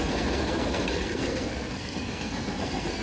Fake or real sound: fake